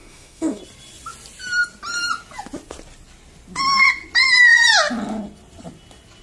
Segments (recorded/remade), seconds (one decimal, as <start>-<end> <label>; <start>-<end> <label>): 0.0-0.6 remade; 0.6-6.2 recorded